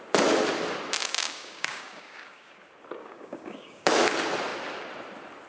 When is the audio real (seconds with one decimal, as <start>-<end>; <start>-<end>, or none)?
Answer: 0.0-1.0; 2.6-3.0; 3.9-5.5